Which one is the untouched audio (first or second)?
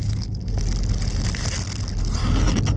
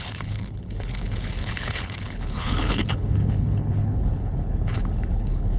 first